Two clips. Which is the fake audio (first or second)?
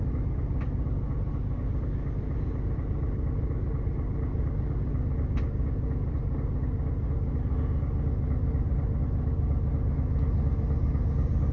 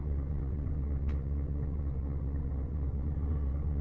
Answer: second